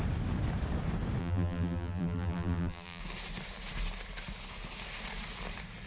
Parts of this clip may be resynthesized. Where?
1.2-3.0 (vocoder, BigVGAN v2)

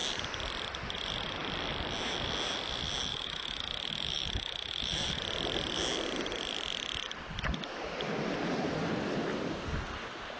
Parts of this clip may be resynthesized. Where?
3.1-5.2 (autoencoder, DAC-VAE)

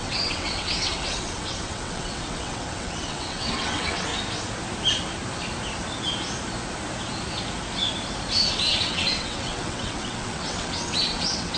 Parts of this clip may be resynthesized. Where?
0.0-4.1 (vocoder, WaveNeXt); 8.5-11.6

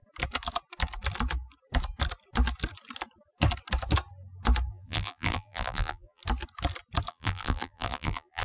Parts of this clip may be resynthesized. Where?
4.7-6.2 (vocoder, BigVGAN v2); 7.1-8.4

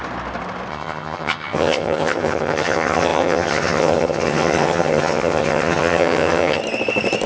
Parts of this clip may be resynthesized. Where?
0.7-6.6 (vocoder, HiFi-GAN)